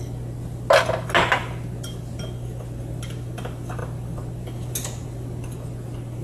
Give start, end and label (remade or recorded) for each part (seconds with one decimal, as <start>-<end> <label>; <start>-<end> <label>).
0.0-6.2 recorded

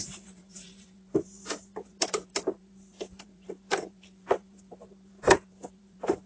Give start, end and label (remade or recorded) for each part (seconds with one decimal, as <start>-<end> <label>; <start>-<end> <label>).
0.0-6.3 remade

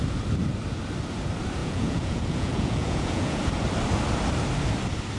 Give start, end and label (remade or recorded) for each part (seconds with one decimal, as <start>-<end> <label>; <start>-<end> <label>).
0.0-1.6 recorded; 1.6-3.4 remade; 3.4-5.2 recorded